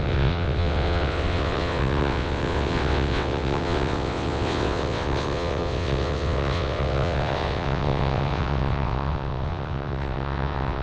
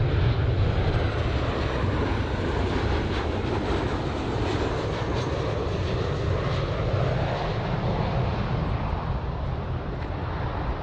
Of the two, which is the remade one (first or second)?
first